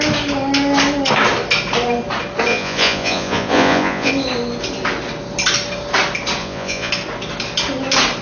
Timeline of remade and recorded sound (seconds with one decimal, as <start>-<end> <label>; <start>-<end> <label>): 0.0-2.5 recorded; 2.5-4.1 remade; 4.1-6.4 recorded; 6.4-6.9 remade; 6.9-8.2 recorded